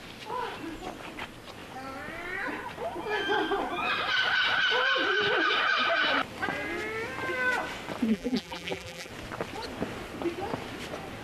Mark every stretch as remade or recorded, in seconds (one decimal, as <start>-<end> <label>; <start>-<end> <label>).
0.0-8.1 recorded; 8.1-9.1 remade; 9.1-11.2 recorded

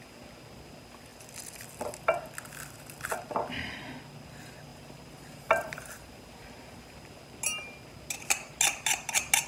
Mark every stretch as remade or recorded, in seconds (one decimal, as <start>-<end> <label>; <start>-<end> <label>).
0.0-4.7 recorded; 4.7-7.2 remade; 7.2-9.5 recorded